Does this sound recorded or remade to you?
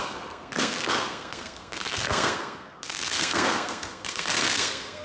remade